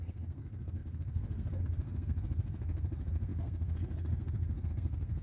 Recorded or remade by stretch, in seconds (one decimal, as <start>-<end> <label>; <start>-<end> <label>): 0.0-5.2 remade